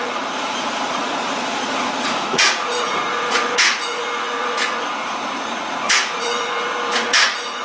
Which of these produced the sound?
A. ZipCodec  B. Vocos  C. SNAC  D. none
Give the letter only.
B